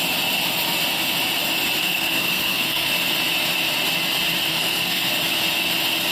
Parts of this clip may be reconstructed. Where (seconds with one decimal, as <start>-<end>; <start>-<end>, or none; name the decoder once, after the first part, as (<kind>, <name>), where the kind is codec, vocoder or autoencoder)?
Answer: 1.8-2.9 (codec, SNAC); 4.5-5.1